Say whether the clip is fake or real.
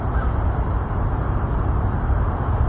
real